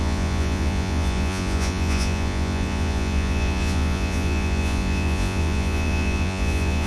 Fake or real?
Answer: fake